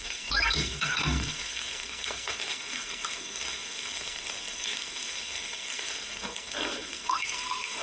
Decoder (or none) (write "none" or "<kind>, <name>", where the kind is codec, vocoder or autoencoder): codec, SNAC